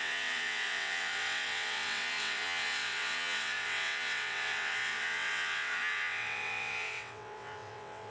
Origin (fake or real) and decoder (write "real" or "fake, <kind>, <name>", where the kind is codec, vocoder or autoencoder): fake, vocoder, WaveNeXt